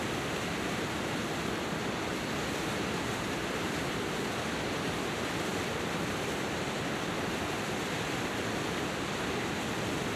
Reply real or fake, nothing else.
fake